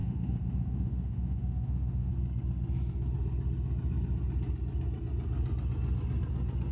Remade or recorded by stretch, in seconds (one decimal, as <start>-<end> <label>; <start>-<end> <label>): 0.0-2.1 remade; 2.1-6.7 recorded